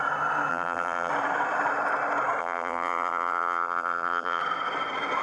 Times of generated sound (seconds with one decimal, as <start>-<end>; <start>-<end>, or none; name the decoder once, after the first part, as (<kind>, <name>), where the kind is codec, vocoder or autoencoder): 0.5-1.1 (vocoder, BigVGAN v2); 2.4-4.4

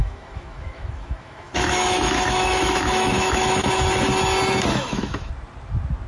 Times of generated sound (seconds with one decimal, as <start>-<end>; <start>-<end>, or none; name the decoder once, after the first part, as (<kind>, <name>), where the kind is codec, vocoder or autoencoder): 0.0-3.7 (autoencoder, DAC-VAE); 4.7-5.3

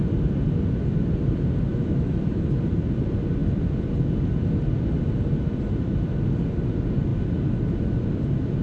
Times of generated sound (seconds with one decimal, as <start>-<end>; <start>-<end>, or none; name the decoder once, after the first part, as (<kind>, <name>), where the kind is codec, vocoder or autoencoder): 1.7-2.5 (autoencoder, DAC-VAE)

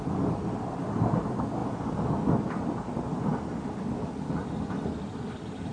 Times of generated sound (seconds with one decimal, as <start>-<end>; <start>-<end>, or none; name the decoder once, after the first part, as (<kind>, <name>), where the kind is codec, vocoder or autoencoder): none

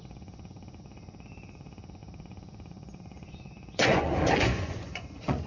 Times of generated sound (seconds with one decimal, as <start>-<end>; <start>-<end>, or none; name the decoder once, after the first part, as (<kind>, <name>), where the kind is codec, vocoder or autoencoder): 0.0-5.5 (vocoder, Vocos)